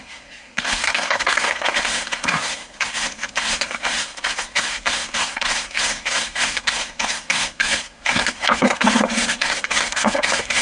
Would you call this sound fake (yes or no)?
yes